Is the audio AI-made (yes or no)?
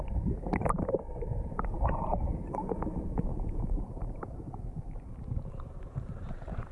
yes